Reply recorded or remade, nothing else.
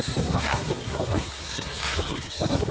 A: remade